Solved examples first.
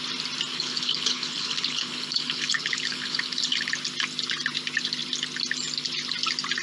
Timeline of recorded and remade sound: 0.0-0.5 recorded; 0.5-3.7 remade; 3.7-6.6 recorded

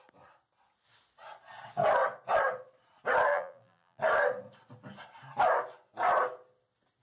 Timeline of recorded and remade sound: 0.0-3.3 recorded; 3.3-4.0 remade; 4.0-7.0 recorded

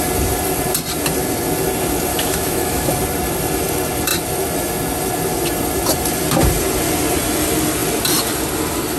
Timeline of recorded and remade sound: 0.0-2.1 recorded; 2.1-2.9 remade; 2.9-9.0 recorded

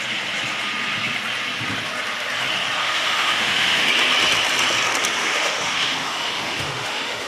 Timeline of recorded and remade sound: 0.0-2.8 recorded; 2.8-3.9 remade; 3.9-5.2 recorded; 5.2-7.3 remade

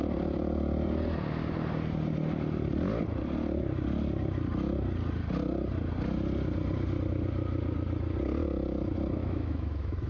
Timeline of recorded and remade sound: 0.0-9.2 recorded; 9.2-10.1 remade